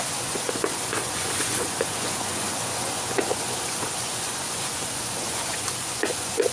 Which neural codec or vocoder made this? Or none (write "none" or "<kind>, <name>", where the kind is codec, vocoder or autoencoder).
vocoder, Vocos